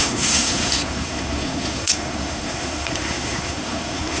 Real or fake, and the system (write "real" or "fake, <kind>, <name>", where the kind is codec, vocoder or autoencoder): fake, codec, SNAC